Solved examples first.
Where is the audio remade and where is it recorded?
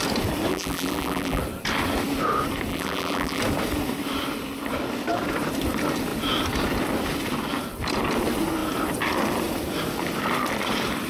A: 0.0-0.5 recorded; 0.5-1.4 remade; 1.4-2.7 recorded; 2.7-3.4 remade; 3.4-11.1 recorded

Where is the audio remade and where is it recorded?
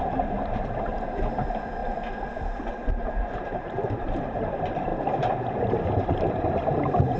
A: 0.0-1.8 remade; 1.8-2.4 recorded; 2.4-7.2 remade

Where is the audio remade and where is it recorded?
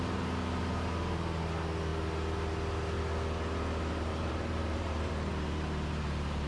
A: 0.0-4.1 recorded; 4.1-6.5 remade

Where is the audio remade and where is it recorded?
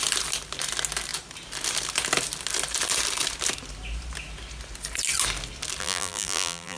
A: 0.0-5.8 recorded; 5.8-6.8 remade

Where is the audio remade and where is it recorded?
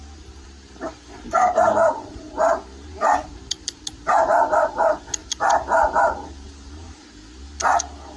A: 0.0-3.8 remade; 3.8-5.2 recorded; 5.2-7.0 remade; 7.0-8.2 recorded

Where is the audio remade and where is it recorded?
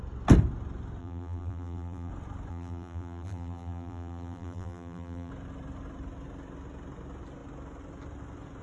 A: 0.0-1.0 recorded; 1.0-2.1 remade; 2.1-2.5 recorded; 2.5-5.3 remade; 5.3-8.6 recorded